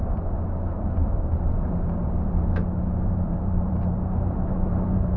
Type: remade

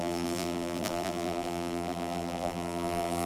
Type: remade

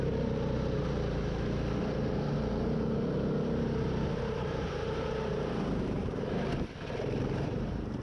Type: remade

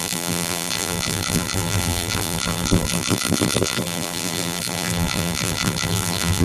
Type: remade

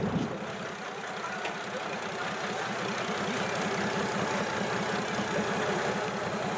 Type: recorded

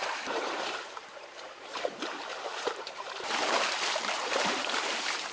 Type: remade